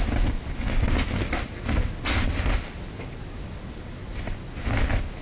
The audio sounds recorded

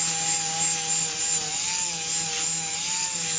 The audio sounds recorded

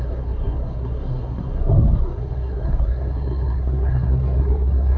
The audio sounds remade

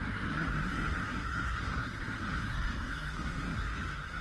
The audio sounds remade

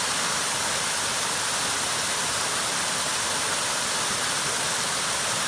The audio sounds recorded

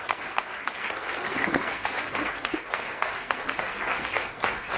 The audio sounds remade